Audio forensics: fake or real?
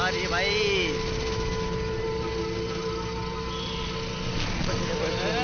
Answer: real